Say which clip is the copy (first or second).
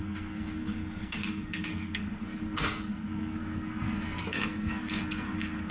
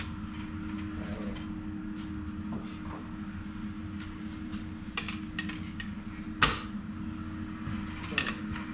first